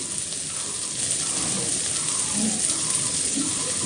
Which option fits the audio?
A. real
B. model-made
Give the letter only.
A